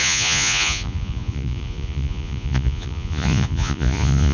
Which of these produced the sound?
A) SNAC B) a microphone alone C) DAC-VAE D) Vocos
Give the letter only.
D